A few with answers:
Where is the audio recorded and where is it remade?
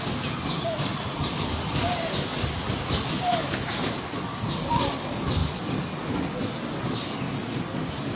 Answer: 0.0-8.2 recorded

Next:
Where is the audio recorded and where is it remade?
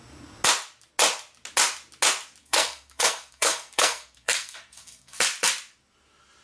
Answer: 0.0-2.4 recorded; 2.4-5.2 remade; 5.2-6.4 recorded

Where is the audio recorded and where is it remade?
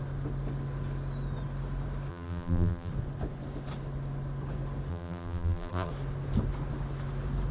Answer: 0.0-2.1 recorded; 2.1-2.9 remade; 2.9-4.9 recorded; 4.9-5.9 remade; 5.9-7.5 recorded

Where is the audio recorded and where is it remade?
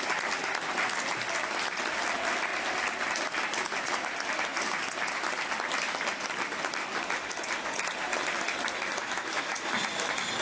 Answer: 0.0-9.0 recorded; 9.0-9.7 remade; 9.7-10.4 recorded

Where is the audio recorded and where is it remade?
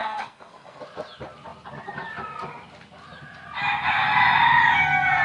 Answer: 0.0-0.8 remade; 0.8-5.2 recorded